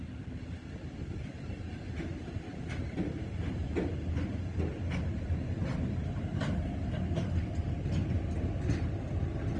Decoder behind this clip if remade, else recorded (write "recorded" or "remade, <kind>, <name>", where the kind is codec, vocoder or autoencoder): recorded